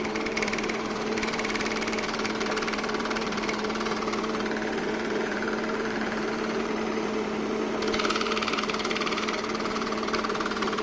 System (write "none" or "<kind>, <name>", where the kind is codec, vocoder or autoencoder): vocoder, BigVGAN v2